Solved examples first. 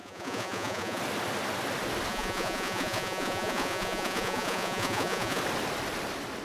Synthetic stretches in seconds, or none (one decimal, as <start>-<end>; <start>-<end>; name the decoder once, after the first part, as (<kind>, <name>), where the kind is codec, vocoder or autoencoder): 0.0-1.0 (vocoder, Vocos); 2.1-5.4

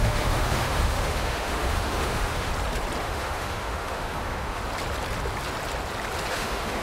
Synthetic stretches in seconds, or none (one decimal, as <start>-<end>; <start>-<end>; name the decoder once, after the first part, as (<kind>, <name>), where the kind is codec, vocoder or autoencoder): 0.0-2.5 (autoencoder, DAC-VAE); 3.0-4.6; 6.3-6.8

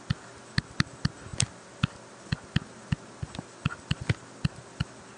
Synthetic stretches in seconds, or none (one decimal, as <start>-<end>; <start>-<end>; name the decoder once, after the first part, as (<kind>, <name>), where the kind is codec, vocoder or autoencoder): none

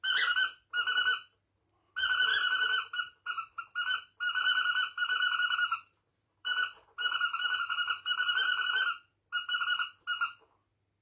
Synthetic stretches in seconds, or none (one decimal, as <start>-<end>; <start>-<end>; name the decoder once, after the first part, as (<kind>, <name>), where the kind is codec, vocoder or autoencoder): 6.1-8.6 (vocoder, BigVGAN v2)

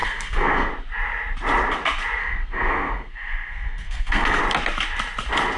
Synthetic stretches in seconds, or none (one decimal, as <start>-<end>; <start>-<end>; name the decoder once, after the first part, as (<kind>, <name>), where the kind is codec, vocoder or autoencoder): 0.0-0.7 (codec, SNAC); 2.2-4.4

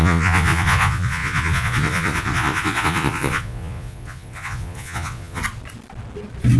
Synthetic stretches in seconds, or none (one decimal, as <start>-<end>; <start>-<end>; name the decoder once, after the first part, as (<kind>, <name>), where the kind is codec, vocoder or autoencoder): 0.0-5.4 (vocoder, Vocos)

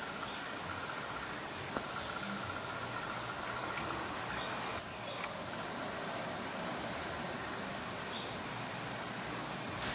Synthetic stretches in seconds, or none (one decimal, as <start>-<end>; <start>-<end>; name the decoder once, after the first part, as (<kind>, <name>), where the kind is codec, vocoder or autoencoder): none

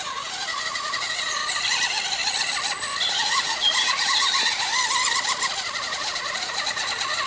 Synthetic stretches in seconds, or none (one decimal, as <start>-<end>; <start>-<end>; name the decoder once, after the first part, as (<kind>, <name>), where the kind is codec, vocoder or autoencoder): 0.0-1.4 (vocoder, Vocos); 3.1-4.7; 5.8-7.3